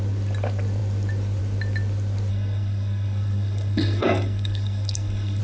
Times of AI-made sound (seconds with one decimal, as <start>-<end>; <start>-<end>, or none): 2.3-5.4